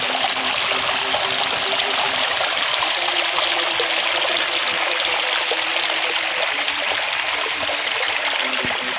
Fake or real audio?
real